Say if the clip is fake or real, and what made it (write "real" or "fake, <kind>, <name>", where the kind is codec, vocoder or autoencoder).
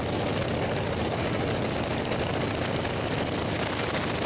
real